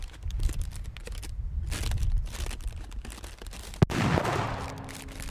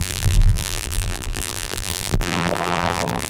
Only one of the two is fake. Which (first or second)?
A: second